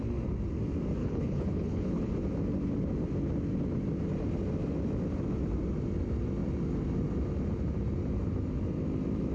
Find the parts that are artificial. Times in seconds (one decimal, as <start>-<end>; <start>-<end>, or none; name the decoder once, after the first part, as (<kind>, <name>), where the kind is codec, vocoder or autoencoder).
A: 1.0-2.1 (codec, HILCodec)